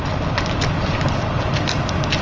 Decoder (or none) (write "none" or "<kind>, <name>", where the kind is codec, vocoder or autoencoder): none